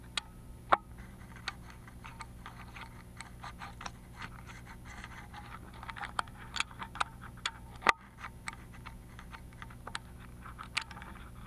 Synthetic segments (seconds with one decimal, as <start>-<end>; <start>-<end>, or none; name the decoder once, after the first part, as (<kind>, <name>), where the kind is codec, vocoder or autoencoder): none